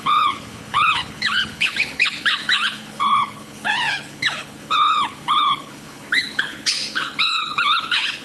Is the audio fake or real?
fake